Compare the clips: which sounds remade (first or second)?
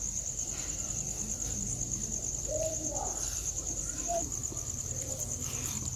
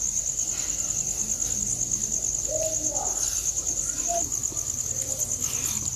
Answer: first